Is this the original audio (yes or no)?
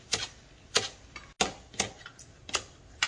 yes